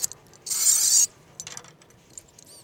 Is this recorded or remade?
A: recorded